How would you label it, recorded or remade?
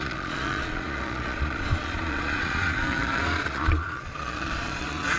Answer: remade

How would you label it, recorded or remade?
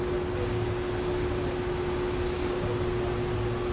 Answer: recorded